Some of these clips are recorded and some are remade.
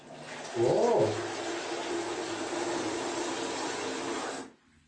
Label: recorded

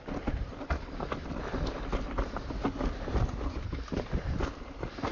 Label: recorded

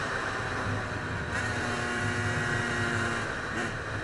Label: recorded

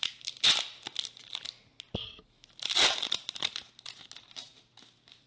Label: recorded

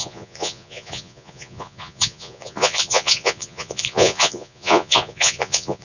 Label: remade